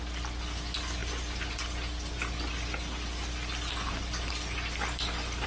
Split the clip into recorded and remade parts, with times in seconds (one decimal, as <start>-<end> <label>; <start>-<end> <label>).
0.0-5.5 recorded